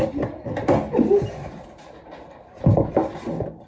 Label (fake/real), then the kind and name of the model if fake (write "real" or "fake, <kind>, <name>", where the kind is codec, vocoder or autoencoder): real